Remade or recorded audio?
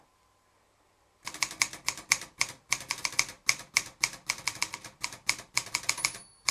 remade